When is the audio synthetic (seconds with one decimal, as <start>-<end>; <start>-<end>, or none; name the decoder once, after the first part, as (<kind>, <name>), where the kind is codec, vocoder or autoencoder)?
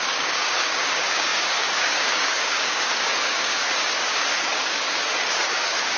0.0-6.0 (codec, DAC)